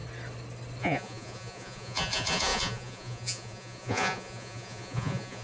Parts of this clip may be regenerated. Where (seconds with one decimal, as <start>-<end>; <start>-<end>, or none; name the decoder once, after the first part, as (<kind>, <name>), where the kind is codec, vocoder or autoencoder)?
0.8-5.4 (vocoder, Vocos)